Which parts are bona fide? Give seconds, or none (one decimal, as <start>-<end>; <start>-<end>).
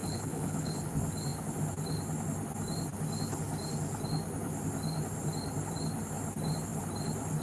0.8-7.4